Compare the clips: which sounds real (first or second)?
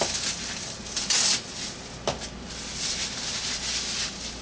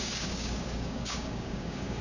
first